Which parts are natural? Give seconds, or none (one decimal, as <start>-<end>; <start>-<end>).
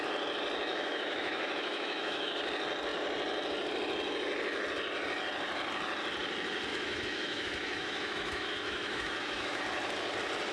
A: 0.0-0.7; 2.4-6.7; 9.6-10.5